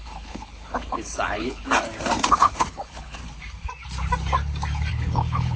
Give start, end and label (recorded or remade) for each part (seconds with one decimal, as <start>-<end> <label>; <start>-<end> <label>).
0.0-1.6 remade; 1.6-2.2 recorded; 2.2-3.2 remade; 3.2-4.9 recorded; 4.9-5.6 remade